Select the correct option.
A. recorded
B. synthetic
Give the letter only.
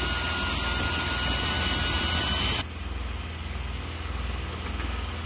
A